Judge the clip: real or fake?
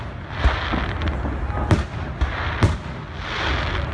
real